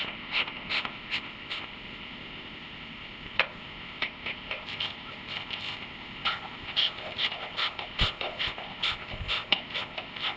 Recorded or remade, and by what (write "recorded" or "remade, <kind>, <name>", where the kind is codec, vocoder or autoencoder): remade, codec, ZipCodec